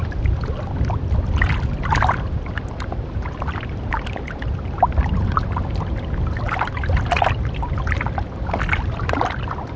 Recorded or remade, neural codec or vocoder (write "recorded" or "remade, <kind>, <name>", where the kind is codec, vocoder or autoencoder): recorded